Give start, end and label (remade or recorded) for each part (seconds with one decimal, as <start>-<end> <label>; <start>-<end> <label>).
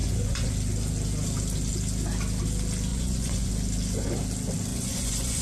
0.0-0.5 remade; 0.5-2.9 recorded; 2.9-3.5 remade; 3.5-4.7 recorded; 4.7-5.4 remade